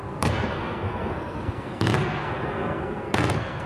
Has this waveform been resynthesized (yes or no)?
yes